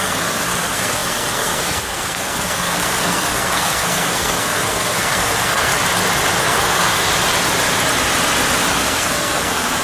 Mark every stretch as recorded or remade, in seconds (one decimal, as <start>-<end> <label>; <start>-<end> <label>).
0.0-5.7 remade; 5.7-6.4 recorded; 6.4-7.1 remade; 7.1-8.7 recorded; 8.7-9.8 remade